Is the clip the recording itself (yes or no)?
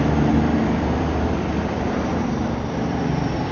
no